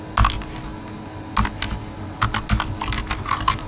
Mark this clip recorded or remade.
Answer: recorded